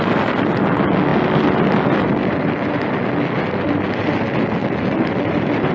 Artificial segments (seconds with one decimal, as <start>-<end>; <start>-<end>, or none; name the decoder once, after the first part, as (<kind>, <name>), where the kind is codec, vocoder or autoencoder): none